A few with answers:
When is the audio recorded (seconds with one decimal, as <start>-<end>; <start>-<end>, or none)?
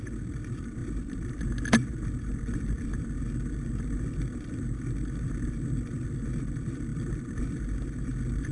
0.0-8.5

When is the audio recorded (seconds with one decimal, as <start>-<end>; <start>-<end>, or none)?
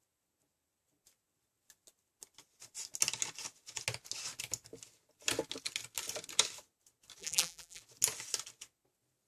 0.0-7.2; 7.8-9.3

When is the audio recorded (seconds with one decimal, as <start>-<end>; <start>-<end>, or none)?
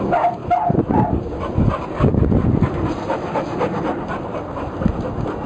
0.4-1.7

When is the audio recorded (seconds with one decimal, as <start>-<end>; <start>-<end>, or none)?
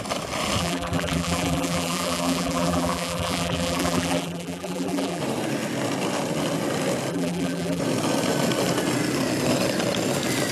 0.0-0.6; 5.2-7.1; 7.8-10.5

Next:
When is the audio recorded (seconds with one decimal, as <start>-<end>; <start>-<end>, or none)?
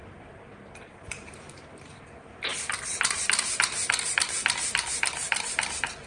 none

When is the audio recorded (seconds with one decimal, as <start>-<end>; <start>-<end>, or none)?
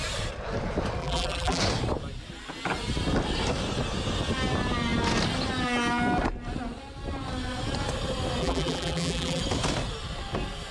0.0-1.0; 1.6-8.4; 9.4-10.7